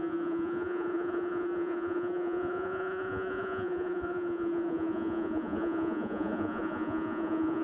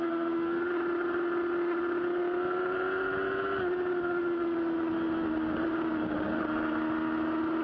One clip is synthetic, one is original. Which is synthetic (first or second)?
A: first